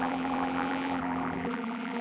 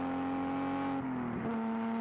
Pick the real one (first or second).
second